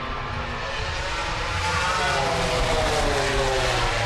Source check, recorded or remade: recorded